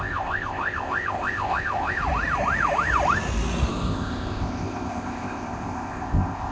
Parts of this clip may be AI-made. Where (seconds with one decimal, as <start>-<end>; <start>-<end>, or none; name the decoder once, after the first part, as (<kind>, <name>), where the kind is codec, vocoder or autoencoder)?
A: 0.0-2.0 (codec, ZipCodec); 3.7-6.5